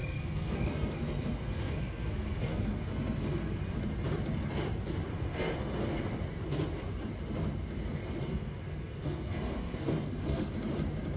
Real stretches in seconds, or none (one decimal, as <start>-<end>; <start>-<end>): 3.6-5.1; 6.0-8.0; 10.5-11.2